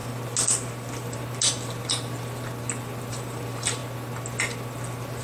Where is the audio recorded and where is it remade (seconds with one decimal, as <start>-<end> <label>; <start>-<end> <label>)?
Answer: 0.0-3.1 recorded; 3.1-3.8 remade; 3.8-5.2 recorded